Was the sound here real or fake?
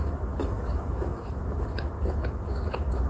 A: fake